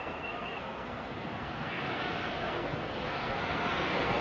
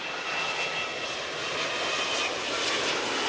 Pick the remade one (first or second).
first